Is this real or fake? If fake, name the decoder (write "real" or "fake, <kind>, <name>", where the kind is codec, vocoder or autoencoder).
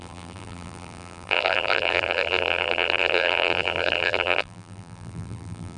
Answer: fake, vocoder, BigVGAN v2